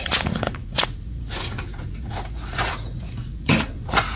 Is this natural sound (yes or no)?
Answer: no